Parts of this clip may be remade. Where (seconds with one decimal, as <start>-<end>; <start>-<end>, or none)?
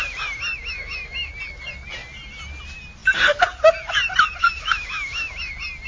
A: 0.6-1.3; 4.4-5.5